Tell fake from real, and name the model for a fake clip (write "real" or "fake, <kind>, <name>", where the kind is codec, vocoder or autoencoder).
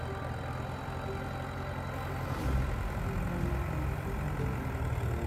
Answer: real